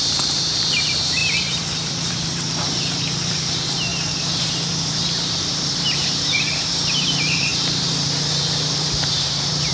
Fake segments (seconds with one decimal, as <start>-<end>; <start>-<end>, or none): 0.0-9.7